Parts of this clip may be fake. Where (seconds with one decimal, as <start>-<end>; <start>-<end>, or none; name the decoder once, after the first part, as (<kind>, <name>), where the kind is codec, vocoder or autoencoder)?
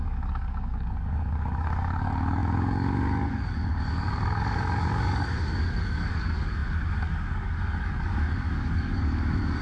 0.0-9.6 (codec, DAC)